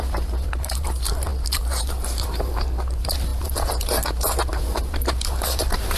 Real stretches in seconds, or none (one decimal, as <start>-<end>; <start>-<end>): none